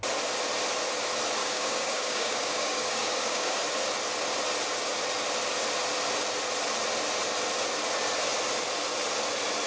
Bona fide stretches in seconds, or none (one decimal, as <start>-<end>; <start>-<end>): 0.0-1.4; 3.6-9.7